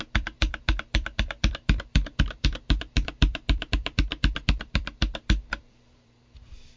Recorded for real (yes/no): no